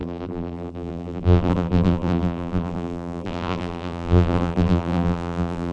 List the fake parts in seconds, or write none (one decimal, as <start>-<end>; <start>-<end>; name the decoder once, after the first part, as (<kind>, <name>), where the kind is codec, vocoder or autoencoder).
0.0-5.7 (vocoder, BigVGAN v2)

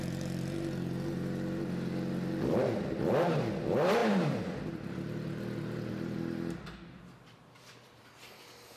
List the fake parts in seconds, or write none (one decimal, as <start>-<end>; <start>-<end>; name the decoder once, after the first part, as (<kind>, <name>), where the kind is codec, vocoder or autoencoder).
0.0-8.8 (vocoder, BigVGAN v2)

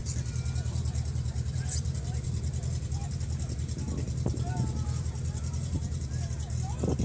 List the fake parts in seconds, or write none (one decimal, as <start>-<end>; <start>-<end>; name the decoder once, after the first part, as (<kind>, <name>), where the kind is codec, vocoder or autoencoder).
0.0-2.6 (vocoder, BigVGAN v2)

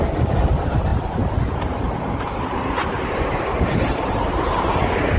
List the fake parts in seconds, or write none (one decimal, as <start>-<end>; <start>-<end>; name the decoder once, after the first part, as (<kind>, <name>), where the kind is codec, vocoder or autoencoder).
0.0-5.2 (vocoder, BigVGAN v2)

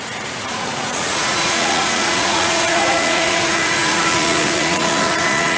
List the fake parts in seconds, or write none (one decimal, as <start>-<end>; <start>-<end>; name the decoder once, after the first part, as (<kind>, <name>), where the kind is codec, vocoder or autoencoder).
0.0-5.6 (vocoder, Vocos)